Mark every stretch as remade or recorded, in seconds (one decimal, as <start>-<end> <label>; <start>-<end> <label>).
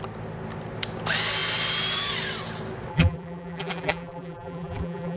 0.0-2.9 recorded; 2.9-5.2 remade